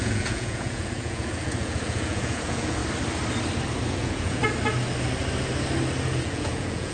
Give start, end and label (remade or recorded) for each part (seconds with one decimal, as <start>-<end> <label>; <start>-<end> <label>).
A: 0.0-2.8 remade; 2.8-3.9 recorded; 3.9-4.4 remade; 4.4-6.2 recorded; 6.2-6.9 remade